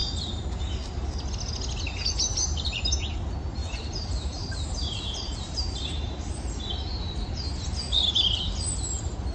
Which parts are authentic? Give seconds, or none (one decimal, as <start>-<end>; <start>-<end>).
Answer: 0.0-2.3; 3.0-3.6; 7.1-9.3